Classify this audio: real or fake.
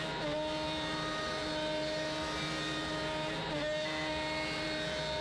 real